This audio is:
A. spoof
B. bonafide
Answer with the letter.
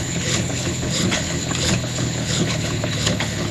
A